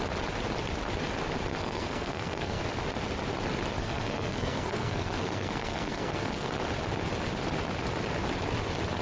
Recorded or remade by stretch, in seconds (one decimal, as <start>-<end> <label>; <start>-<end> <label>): 0.0-1.5 recorded; 1.5-2.6 remade; 2.6-3.8 recorded; 3.8-6.6 remade; 6.6-9.0 recorded